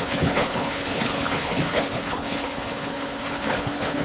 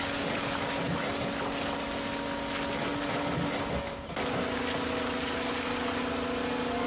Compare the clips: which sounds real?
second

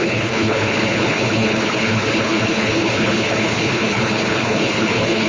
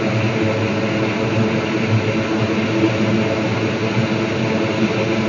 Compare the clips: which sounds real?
second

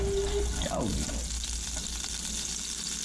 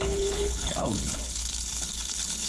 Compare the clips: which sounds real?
first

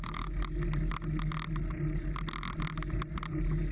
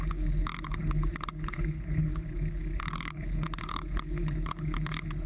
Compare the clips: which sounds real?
first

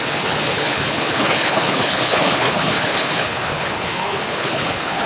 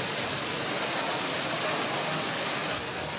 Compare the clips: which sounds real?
second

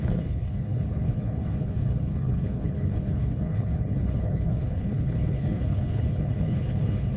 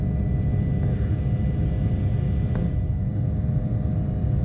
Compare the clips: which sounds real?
second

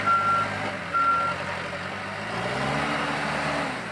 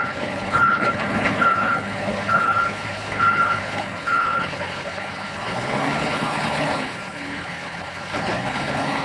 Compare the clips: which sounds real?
first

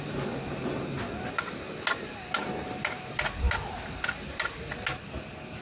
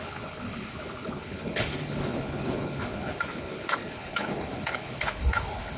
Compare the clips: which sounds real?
first